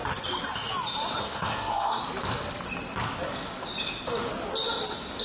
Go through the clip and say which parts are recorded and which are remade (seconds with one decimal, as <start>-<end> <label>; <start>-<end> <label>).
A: 0.0-1.2 recorded; 1.2-2.0 remade; 2.0-5.2 recorded